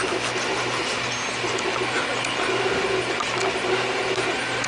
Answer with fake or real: real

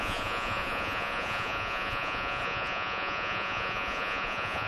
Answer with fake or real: fake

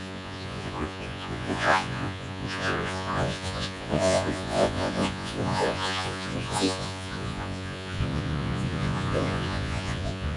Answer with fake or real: fake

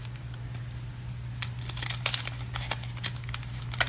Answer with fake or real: real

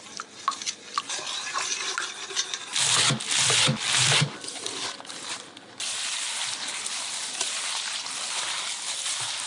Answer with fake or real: real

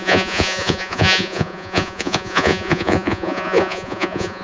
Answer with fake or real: fake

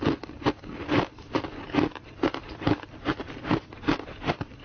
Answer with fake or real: real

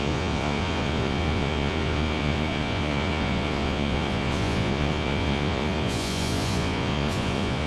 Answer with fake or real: fake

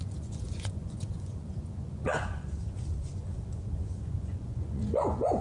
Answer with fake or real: fake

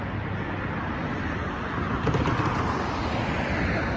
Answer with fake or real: real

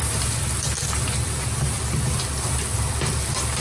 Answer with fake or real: real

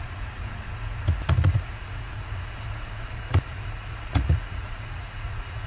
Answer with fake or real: fake